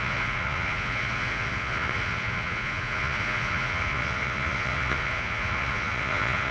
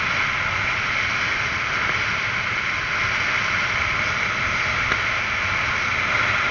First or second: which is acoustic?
second